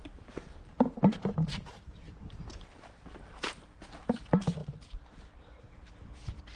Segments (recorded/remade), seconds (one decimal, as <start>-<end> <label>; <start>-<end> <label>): 0.0-3.9 remade; 3.9-4.6 recorded; 4.6-5.9 remade; 5.9-6.6 recorded